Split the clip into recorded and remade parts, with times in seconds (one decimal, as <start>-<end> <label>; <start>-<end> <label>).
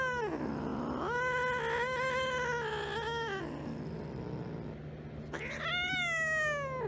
0.0-6.9 recorded